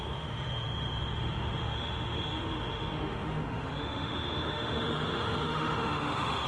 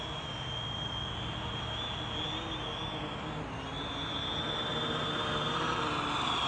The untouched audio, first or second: second